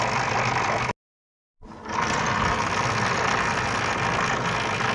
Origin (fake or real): real